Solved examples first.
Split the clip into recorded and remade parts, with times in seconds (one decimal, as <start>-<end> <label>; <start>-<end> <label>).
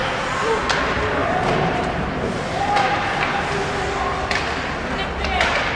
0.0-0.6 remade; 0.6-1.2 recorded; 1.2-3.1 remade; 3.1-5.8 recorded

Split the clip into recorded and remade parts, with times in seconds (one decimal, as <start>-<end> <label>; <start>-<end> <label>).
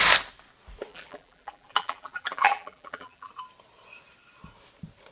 0.0-0.9 recorded; 0.9-3.3 remade; 3.3-5.1 recorded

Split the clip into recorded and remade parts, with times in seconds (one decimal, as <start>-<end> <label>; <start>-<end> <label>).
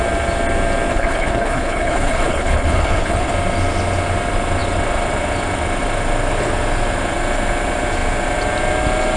0.0-0.9 recorded; 0.9-3.3 remade; 3.3-9.2 recorded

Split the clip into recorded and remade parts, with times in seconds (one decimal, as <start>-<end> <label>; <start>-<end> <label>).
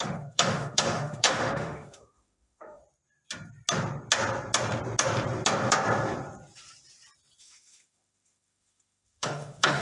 0.0-2.8 remade; 2.8-7.4 recorded; 7.4-9.8 remade